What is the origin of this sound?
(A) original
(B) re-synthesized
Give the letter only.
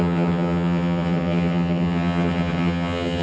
B